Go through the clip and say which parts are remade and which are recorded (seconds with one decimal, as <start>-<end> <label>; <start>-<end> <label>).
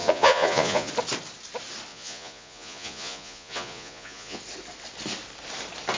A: 0.0-0.9 remade; 0.9-1.9 recorded; 1.9-4.4 remade; 4.4-6.0 recorded